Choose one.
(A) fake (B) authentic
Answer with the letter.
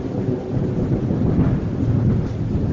B